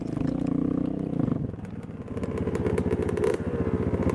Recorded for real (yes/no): yes